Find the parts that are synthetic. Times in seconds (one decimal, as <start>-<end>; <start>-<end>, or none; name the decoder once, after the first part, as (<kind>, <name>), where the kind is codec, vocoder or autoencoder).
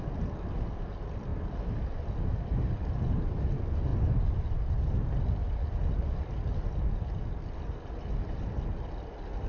none